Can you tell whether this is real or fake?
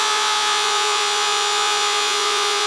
fake